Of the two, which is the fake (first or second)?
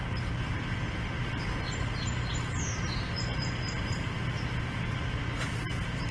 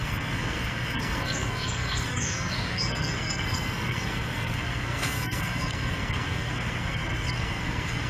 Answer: second